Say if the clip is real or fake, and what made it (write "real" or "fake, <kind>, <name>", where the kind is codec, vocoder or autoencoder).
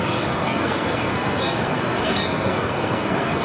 fake, codec, SNAC